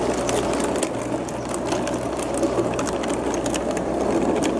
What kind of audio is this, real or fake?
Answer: real